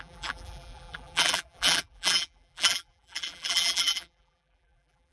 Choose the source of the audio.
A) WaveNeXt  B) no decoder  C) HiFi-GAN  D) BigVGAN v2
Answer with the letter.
D